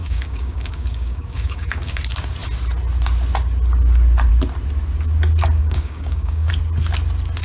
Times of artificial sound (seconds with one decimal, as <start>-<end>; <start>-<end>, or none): 0.0-2.0; 5.6-6.5